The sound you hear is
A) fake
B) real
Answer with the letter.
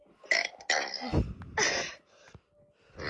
B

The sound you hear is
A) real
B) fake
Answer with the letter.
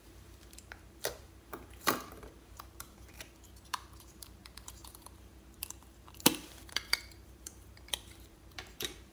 B